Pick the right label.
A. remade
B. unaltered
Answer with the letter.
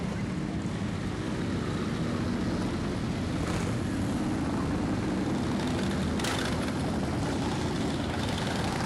B